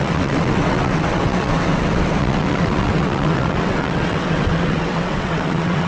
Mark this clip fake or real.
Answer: fake